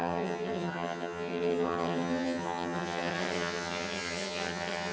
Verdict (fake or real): fake